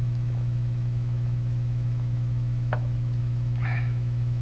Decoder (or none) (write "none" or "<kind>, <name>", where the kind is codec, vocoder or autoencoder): autoencoder, DAC-VAE